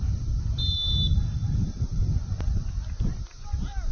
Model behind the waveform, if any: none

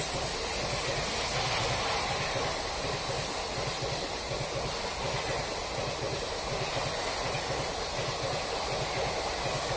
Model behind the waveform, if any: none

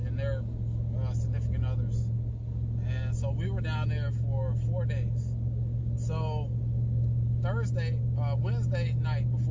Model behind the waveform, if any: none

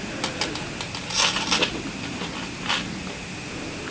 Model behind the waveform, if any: none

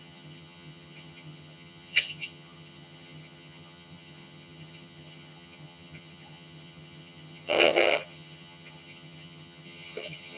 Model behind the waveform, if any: vocoder, HiFi-GAN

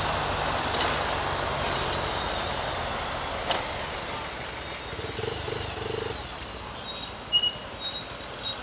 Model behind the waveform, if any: none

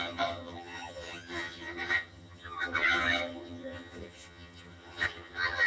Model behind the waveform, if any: vocoder, HiFi-GAN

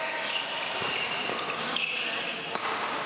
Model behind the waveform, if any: none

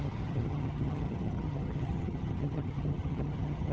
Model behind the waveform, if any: vocoder, HiFi-GAN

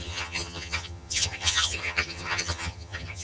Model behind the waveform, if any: vocoder, HiFi-GAN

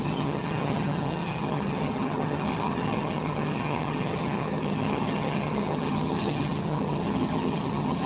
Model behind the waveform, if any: vocoder, HiFi-GAN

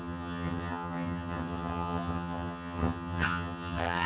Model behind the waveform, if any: vocoder, HiFi-GAN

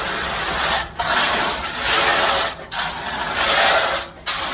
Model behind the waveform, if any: none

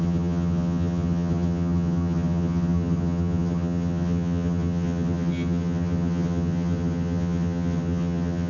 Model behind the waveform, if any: vocoder, HiFi-GAN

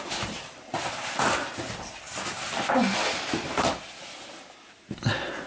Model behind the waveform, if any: none